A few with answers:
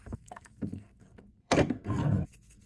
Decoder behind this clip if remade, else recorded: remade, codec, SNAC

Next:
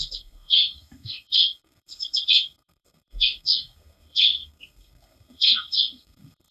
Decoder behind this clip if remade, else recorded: remade, codec, SNAC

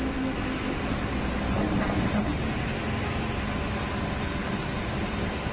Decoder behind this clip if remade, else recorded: recorded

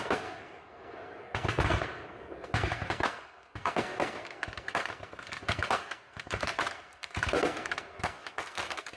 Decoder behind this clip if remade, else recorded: remade, codec, SNAC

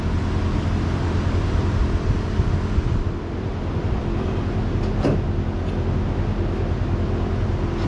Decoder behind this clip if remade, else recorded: recorded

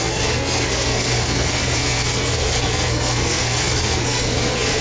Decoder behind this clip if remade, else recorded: remade, codec, SNAC